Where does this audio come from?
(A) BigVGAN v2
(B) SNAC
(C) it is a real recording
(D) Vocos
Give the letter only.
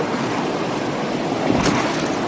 C